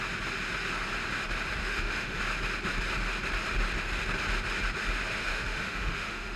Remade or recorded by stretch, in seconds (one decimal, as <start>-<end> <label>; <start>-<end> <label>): 0.0-1.6 recorded; 1.6-2.2 remade; 2.2-5.2 recorded; 5.2-6.4 remade